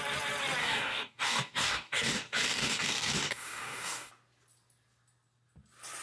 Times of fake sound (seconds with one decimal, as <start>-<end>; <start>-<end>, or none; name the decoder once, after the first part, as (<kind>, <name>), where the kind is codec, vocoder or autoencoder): 0.6-4.1 (codec, DAC)